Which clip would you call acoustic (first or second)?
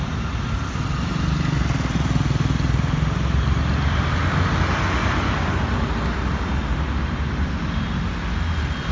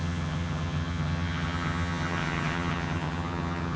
first